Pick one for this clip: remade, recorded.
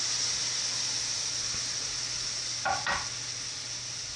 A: recorded